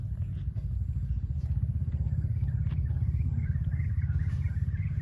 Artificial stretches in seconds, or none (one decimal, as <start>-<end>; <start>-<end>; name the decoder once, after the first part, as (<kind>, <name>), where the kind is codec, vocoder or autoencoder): none